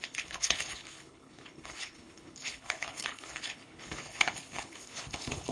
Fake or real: fake